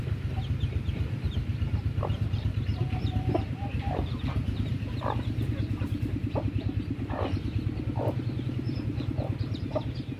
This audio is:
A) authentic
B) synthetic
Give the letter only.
B